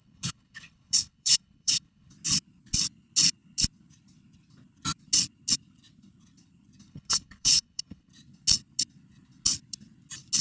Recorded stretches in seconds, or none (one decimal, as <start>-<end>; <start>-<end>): 2.1-6.9; 8.1-10.4